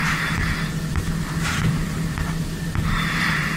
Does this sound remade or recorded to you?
recorded